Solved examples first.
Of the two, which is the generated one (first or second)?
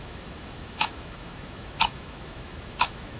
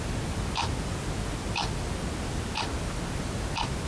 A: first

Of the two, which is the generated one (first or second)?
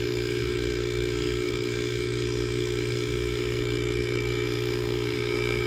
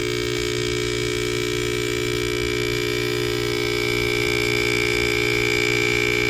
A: first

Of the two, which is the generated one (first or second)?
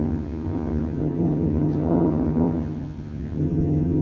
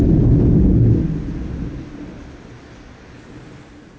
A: first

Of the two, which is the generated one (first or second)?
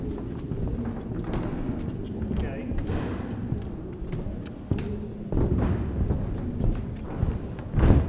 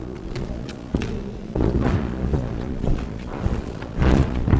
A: second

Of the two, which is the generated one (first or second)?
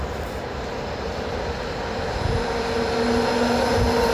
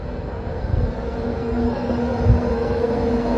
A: second